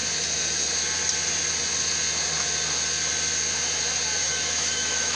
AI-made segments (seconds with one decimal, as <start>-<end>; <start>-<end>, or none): 4.2-5.2

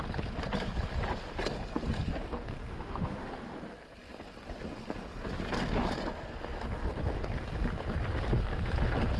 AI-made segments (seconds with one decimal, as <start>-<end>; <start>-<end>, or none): 2.7-3.4

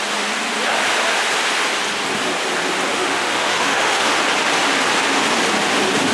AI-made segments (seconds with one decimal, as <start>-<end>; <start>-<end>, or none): 2.9-4.2

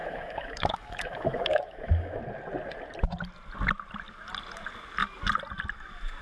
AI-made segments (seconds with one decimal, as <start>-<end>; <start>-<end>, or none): 0.0-2.2

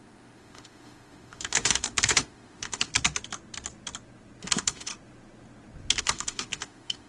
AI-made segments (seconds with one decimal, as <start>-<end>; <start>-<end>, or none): 0.0-2.9; 4.4-4.9; 6.0-7.1

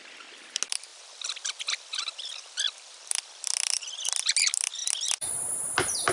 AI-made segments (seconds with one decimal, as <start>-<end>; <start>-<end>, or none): none